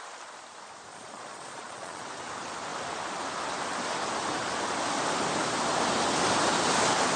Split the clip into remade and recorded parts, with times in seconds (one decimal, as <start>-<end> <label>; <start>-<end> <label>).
0.0-0.9 recorded; 0.9-2.0 remade; 2.0-7.2 recorded